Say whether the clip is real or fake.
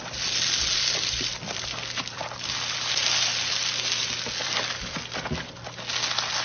real